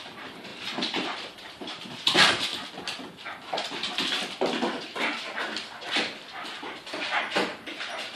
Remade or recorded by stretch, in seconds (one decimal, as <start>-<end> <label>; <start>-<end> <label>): 0.0-2.5 remade; 2.5-7.2 recorded; 7.2-8.2 remade